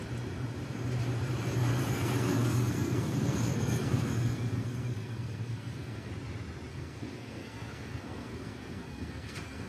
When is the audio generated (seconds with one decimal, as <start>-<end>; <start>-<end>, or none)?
1.7-6.1; 6.7-9.7